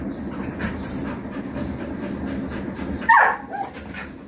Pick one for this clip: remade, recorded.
recorded